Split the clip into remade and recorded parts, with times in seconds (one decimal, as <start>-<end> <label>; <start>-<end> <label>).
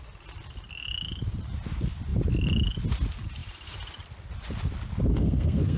0.0-5.1 recorded; 5.1-5.8 remade